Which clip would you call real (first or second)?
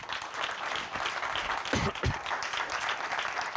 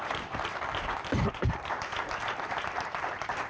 first